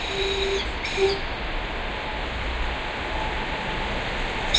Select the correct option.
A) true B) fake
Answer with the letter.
A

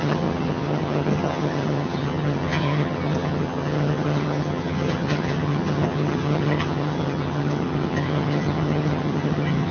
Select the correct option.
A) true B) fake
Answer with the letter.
B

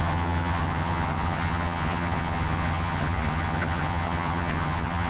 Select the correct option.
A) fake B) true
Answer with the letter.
A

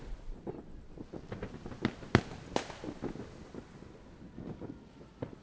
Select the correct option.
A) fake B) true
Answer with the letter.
B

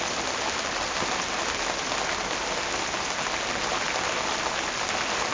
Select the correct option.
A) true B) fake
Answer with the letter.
A